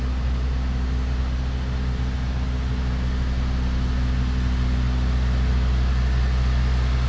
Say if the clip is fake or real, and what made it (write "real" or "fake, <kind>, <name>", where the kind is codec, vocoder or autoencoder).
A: real